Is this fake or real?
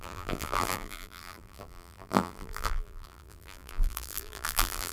fake